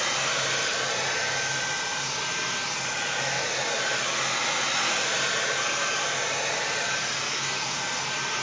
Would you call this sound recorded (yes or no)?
yes